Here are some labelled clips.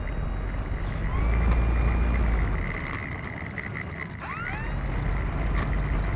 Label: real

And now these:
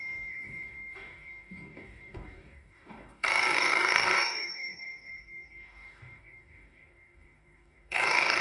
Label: fake